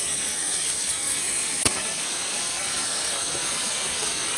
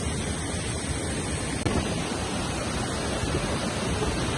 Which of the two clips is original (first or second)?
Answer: second